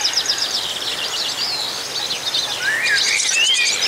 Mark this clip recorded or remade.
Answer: recorded